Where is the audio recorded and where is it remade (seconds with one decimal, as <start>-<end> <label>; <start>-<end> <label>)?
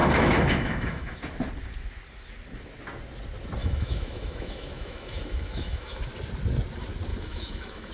0.0-1.2 remade; 1.2-3.6 recorded; 3.6-6.0 remade; 6.0-7.1 recorded; 7.1-7.9 remade